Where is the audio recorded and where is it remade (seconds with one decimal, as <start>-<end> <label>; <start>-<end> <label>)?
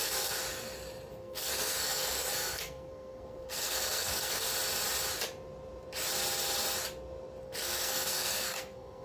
0.0-0.4 remade; 0.4-1.1 recorded; 1.1-4.5 remade; 4.5-7.4 recorded; 7.4-9.0 remade